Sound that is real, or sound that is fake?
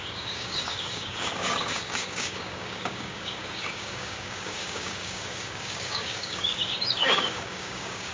fake